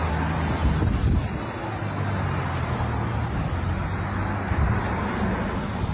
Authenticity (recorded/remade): recorded